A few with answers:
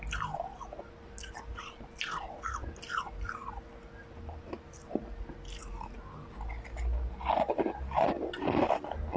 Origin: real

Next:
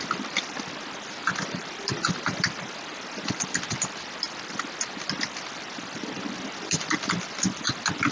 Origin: real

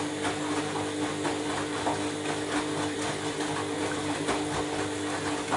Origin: real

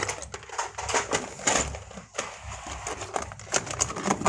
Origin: real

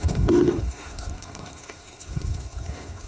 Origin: fake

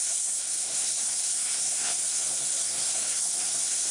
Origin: fake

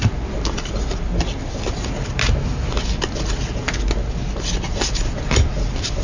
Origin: real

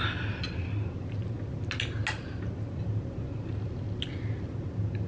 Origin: real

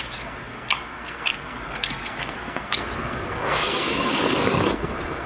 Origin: fake